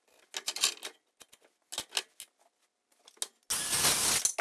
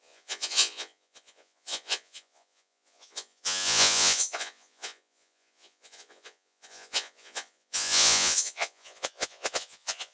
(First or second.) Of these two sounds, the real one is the first